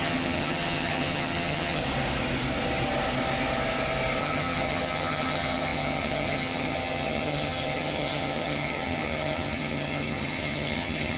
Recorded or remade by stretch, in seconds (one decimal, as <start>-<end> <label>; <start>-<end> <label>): 0.0-1.8 remade; 1.8-4.2 recorded; 4.2-11.2 remade